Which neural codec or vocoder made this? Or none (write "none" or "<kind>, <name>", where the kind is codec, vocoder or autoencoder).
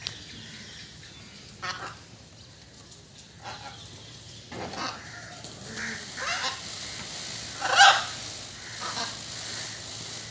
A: none